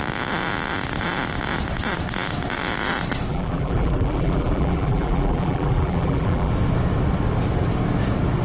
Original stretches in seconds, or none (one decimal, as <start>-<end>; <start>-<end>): 0.0-3.3; 6.5-8.4